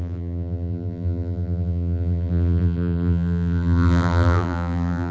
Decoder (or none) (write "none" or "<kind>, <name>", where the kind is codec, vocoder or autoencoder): vocoder, BigVGAN v2